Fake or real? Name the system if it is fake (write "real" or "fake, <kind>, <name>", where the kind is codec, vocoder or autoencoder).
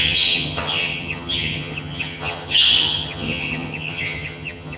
fake, vocoder, HiFi-GAN